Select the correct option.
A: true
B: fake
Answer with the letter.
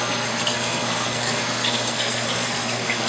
B